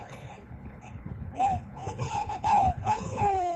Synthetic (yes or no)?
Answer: yes